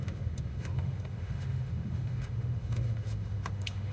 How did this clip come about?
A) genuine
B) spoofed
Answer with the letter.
B